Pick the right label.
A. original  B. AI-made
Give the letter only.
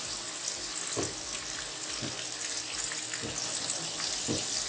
A